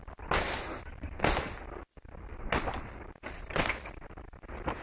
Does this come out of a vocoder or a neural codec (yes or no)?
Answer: no